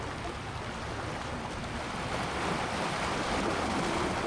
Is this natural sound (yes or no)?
yes